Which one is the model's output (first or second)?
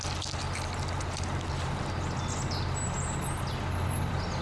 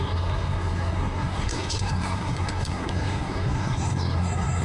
second